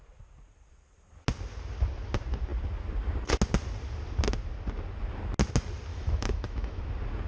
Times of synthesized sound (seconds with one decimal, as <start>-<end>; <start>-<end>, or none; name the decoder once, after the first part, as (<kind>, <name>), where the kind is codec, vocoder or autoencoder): 5.9-6.8 (autoencoder, DAC-VAE)